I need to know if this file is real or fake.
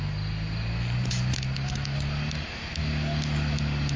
real